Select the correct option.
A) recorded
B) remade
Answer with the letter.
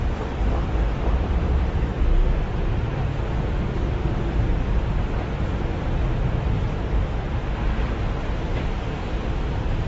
B